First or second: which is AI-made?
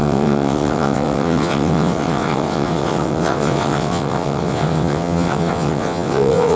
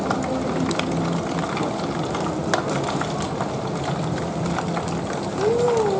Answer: first